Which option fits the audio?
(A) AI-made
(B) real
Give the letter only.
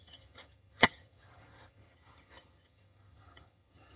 A